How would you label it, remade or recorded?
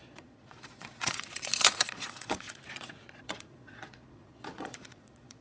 remade